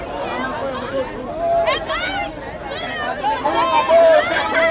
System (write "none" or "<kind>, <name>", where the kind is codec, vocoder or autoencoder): none